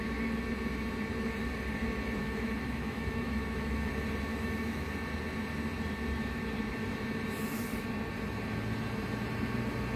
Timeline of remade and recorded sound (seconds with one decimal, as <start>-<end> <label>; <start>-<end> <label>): 0.0-2.2 recorded; 2.2-3.9 remade; 3.9-4.3 recorded; 4.3-4.9 remade; 4.9-10.0 recorded